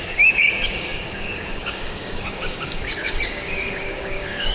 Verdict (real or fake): fake